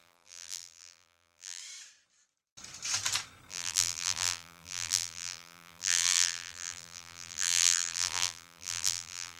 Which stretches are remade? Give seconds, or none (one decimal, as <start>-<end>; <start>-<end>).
0.0-1.6; 3.5-9.4

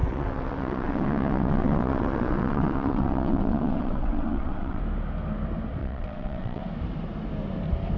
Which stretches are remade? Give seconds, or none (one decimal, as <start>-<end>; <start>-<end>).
0.0-4.8; 5.8-6.6